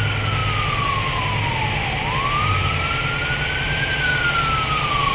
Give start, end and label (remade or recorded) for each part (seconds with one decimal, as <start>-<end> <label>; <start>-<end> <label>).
0.0-5.1 recorded